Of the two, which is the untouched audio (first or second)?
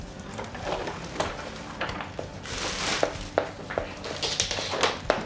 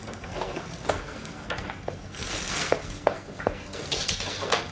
first